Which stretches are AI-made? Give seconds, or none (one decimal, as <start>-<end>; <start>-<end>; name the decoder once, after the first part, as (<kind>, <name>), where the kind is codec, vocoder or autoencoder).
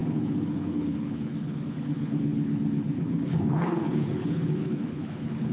0.0-5.5 (codec, HILCodec)